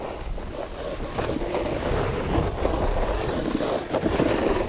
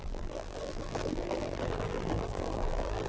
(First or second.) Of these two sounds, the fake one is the second